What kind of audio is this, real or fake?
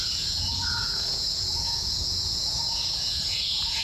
fake